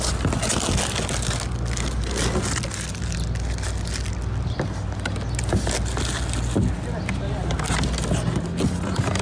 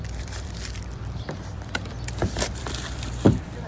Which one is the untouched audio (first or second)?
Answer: first